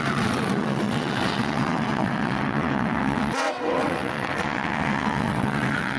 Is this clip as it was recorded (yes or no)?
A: no